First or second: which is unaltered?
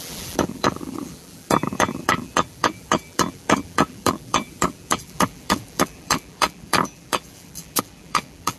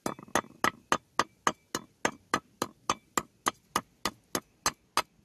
second